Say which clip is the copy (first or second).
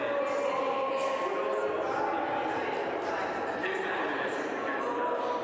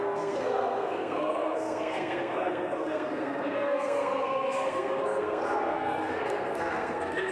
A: second